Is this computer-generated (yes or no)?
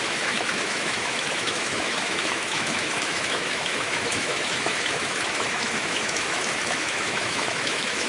yes